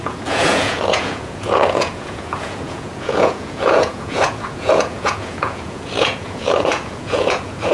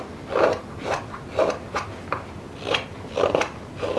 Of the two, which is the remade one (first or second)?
first